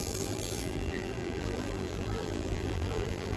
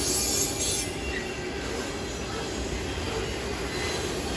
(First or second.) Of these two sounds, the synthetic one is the first